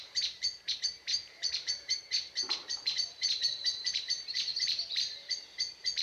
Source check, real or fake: fake